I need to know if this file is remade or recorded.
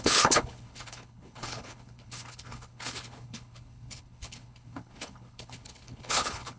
remade